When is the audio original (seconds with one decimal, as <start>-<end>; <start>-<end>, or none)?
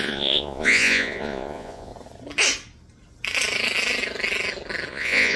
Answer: 1.9-4.9